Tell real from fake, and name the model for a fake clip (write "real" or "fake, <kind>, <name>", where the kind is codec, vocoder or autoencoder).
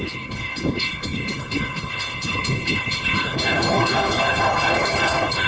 fake, codec, HILCodec